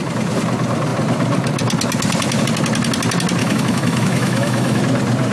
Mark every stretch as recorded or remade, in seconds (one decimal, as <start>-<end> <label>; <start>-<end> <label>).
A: 0.0-3.4 recorded; 3.4-4.8 remade; 4.8-5.3 recorded